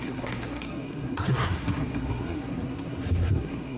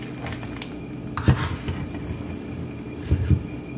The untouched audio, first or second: second